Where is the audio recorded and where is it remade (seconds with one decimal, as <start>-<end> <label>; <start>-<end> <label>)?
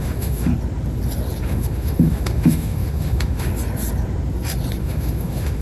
0.0-0.5 remade; 0.5-1.4 recorded; 1.4-3.5 remade; 3.5-4.8 recorded; 4.8-5.6 remade